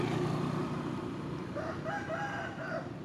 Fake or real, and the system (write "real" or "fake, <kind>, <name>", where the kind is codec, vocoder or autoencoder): real